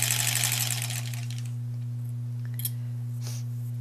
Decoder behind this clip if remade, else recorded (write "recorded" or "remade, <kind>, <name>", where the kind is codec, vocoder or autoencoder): recorded